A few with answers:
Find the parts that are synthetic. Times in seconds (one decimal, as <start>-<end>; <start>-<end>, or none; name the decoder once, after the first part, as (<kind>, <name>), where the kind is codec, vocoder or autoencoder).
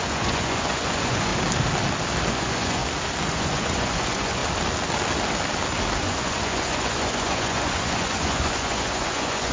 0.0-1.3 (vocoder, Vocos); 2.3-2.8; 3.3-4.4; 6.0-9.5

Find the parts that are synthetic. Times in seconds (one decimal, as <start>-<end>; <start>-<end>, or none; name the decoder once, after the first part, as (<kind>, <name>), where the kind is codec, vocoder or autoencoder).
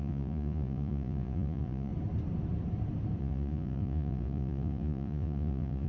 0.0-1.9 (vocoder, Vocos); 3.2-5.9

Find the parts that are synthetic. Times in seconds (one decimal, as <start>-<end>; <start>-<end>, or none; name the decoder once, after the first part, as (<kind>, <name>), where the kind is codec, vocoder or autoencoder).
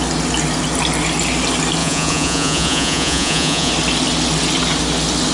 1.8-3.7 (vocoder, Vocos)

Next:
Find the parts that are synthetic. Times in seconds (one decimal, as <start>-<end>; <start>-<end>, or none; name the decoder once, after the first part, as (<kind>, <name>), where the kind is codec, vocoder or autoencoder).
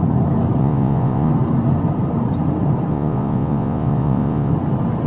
0.6-1.3 (vocoder, Vocos); 2.9-4.5